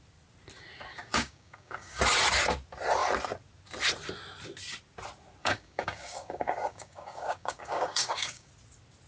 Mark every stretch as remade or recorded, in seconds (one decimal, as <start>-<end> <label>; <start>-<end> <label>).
0.0-0.9 recorded; 0.9-2.0 remade; 2.0-5.4 recorded; 5.4-8.5 remade; 8.5-9.1 recorded